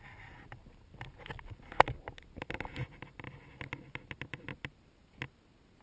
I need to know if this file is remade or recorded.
recorded